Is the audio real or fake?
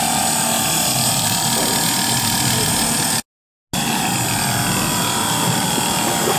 real